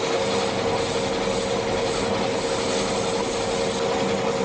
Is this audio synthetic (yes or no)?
no